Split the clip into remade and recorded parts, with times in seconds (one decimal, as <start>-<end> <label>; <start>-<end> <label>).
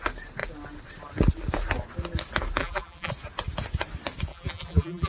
0.0-2.6 recorded; 2.6-3.1 remade; 3.1-4.3 recorded; 4.3-5.1 remade